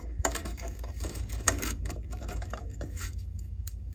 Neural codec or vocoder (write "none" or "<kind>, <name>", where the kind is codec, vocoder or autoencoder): codec, DAC